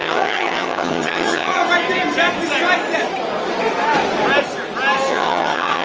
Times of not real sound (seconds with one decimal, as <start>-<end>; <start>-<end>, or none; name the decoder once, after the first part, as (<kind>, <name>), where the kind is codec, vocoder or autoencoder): 0.0-1.6 (vocoder, HiFi-GAN); 5.1-5.8